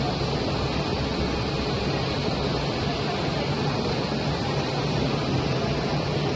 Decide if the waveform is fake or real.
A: real